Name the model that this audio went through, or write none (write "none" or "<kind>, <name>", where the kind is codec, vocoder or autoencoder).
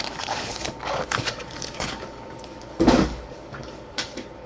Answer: codec, DAC